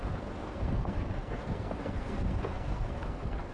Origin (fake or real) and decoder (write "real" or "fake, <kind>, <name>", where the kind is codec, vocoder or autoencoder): fake, codec, SNAC